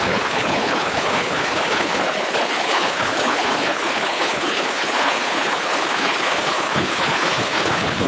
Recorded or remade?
remade